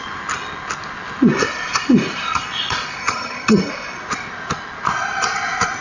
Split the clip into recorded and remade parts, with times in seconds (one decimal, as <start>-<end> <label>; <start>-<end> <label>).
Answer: 0.0-3.0 recorded; 3.0-3.7 remade; 3.7-5.8 recorded